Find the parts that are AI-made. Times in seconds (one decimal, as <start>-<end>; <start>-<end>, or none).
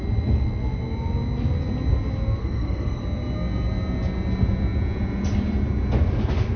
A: 2.4-3.0